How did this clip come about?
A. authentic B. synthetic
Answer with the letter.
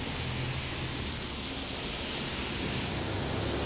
A